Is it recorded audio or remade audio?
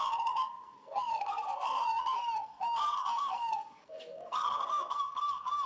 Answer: remade